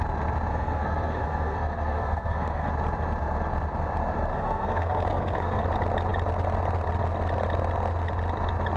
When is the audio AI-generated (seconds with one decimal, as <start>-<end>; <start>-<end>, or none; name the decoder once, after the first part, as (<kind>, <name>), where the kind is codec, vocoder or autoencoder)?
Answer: 0.5-2.7 (codec, SNAC); 4.3-5.6